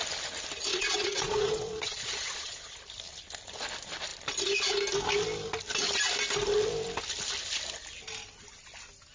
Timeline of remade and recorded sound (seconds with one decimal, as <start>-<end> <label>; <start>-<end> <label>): 0.0-0.7 recorded; 0.7-2.8 remade; 2.8-9.1 recorded